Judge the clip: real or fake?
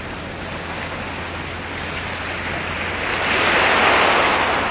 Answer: real